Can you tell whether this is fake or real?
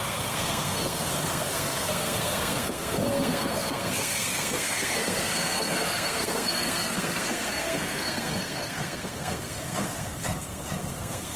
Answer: fake